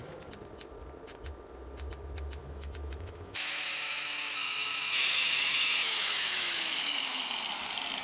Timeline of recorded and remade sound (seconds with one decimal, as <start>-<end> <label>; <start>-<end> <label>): 0.0-2.4 recorded; 2.4-7.2 remade; 7.2-8.0 recorded